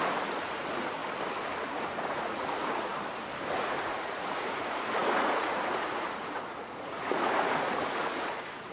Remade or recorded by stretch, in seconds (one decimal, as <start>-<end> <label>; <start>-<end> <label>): 0.0-1.0 remade; 1.0-1.6 recorded; 1.6-2.9 remade; 2.9-3.6 recorded; 3.6-8.7 remade